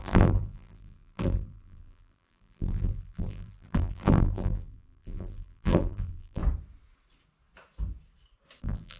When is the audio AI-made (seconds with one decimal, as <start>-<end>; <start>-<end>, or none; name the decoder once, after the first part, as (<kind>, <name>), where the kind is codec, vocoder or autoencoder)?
0.0-6.4 (vocoder, BigVGAN v2); 8.6-9.0

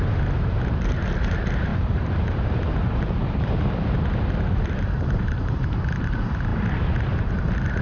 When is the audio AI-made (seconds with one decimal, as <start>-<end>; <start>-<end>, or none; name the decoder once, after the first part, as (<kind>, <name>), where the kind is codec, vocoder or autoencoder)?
0.0-7.8 (vocoder, BigVGAN v2)

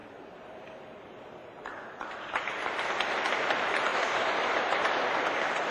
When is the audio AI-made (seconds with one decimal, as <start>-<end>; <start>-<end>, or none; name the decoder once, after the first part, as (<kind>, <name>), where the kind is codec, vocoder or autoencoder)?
0.0-0.8 (vocoder, BigVGAN v2); 1.4-2.2; 3.9-5.2

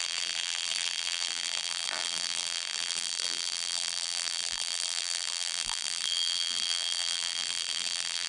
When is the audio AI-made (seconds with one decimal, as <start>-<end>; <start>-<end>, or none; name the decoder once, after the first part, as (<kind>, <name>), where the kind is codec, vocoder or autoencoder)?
0.0-8.3 (vocoder, BigVGAN v2)

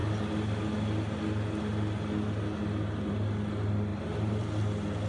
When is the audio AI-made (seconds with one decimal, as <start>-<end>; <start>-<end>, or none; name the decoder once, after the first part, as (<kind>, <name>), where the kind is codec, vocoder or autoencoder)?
3.9-4.5 (vocoder, BigVGAN v2)

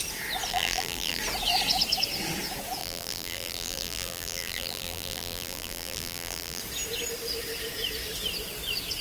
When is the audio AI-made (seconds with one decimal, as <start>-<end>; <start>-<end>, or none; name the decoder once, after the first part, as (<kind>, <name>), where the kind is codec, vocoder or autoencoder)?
0.5-1.2 (vocoder, BigVGAN v2); 2.8-6.6

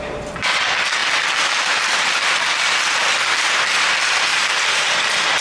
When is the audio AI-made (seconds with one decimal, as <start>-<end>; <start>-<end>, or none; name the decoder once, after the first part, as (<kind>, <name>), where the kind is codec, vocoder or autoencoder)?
4.3-5.0 (vocoder, BigVGAN v2)